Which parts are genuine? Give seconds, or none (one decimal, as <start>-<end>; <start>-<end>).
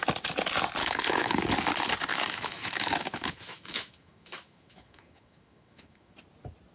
0.0-0.8; 1.4-2.1; 6.1-6.7